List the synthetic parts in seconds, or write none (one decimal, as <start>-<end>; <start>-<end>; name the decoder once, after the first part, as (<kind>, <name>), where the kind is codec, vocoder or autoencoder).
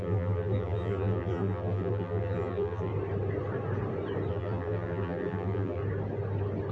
0.0-2.9 (vocoder, BigVGAN v2); 4.3-5.8